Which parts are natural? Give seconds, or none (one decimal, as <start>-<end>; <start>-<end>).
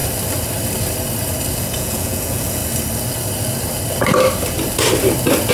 0.0-1.6; 2.6-5.5